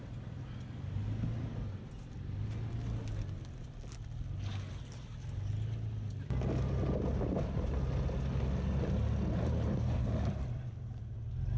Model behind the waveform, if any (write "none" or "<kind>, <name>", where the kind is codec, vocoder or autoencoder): none